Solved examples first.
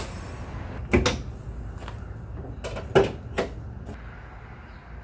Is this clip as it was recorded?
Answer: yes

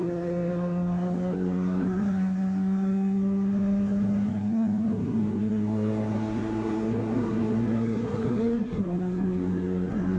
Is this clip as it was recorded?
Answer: no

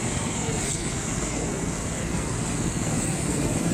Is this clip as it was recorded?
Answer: no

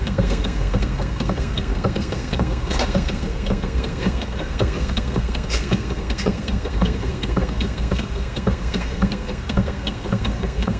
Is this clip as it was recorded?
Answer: no